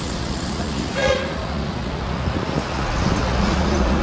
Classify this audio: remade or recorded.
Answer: remade